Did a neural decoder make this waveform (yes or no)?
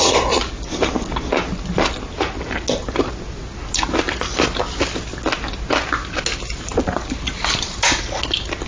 no